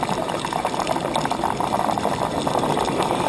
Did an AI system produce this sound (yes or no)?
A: no